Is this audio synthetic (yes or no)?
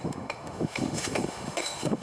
yes